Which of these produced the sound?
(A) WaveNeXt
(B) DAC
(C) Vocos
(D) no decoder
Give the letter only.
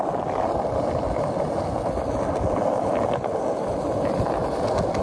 D